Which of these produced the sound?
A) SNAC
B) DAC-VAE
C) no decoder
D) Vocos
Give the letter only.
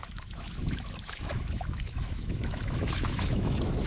B